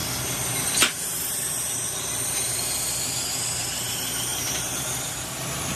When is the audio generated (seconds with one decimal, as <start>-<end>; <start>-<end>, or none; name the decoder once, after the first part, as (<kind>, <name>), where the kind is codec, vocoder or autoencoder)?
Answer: 4.3-4.8 (vocoder, BigVGAN v2)